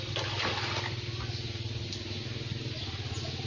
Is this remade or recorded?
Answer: recorded